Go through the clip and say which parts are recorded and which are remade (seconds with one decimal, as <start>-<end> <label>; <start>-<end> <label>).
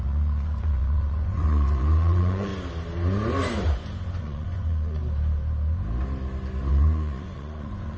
0.0-2.5 remade; 2.5-4.2 recorded; 4.2-5.0 remade; 5.0-6.7 recorded; 6.7-8.0 remade